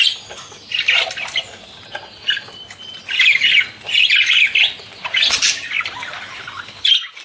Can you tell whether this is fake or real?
real